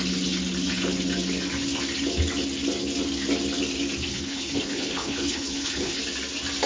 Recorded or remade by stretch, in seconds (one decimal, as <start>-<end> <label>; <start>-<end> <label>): 0.0-4.1 recorded; 4.1-6.0 remade; 6.0-6.7 recorded